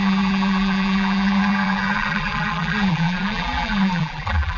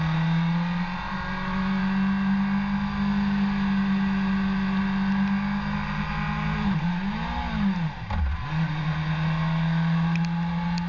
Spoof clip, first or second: first